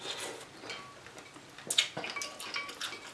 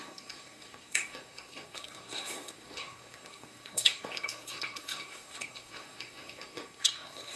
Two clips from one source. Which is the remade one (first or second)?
second